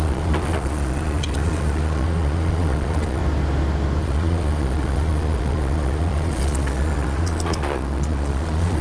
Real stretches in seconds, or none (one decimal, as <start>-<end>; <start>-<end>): 3.2-4.0